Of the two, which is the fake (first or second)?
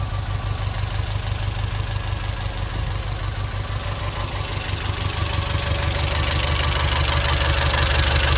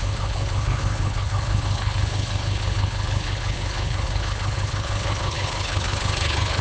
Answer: second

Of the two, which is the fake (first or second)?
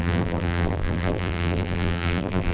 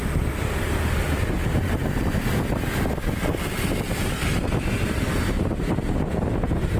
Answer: first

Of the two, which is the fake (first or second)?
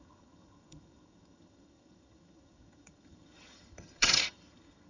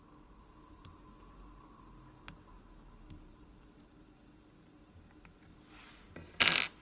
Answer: first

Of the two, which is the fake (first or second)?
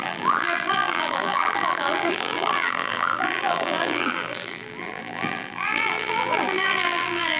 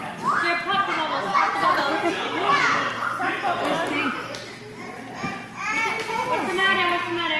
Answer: first